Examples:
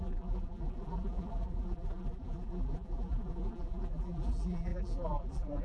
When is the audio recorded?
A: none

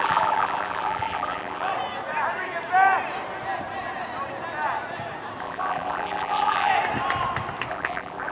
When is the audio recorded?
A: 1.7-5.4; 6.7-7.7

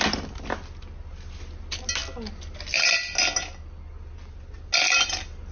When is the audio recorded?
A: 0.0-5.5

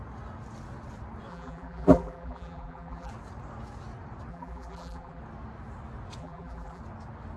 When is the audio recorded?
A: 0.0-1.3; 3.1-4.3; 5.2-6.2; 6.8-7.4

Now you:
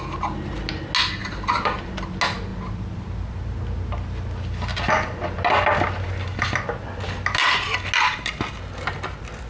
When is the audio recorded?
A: 0.0-1.2; 1.9-9.5

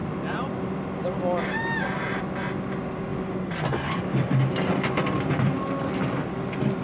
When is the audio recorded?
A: 0.0-3.1; 5.5-6.8